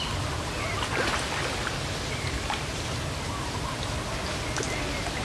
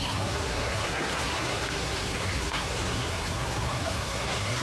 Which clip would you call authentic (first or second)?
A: first